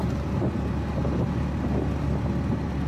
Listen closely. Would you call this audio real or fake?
real